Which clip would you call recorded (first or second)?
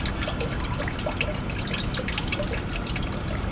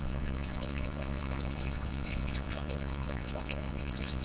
first